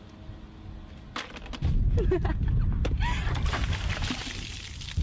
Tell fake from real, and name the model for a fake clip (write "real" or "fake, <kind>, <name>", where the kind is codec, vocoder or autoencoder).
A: real